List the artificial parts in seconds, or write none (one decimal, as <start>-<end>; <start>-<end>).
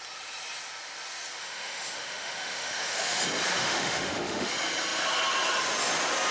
1.4-3.2; 3.6-4.5